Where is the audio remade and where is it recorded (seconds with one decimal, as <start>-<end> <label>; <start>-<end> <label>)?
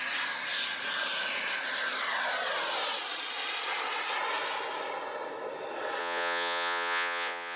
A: 0.0-6.0 recorded; 6.0-7.6 remade